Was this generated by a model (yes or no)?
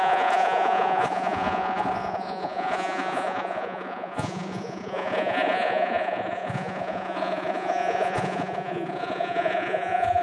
yes